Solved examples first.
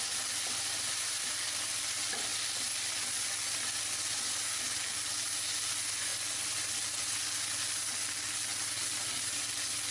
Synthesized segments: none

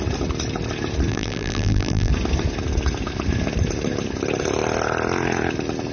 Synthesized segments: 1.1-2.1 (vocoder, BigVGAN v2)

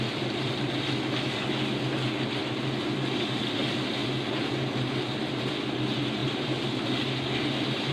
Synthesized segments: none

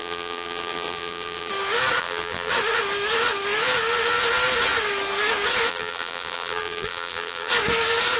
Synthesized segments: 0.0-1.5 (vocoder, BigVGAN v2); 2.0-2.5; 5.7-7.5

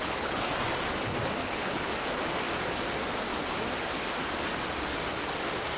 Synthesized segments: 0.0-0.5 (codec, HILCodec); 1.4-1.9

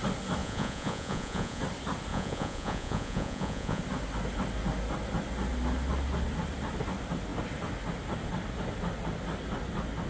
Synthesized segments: 0.4-1.6 (vocoder, Vocos); 2.1-3.8